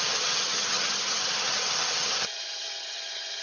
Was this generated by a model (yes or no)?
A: yes